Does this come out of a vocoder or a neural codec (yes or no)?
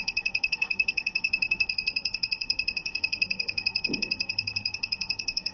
yes